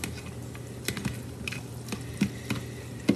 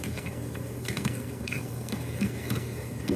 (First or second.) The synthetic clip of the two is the second